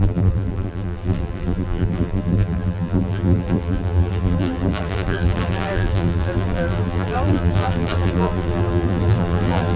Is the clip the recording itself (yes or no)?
no